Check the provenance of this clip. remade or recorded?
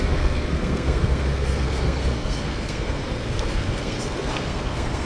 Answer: remade